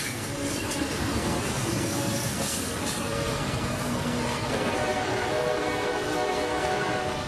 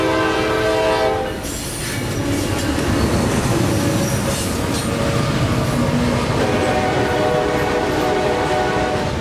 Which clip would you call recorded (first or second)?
second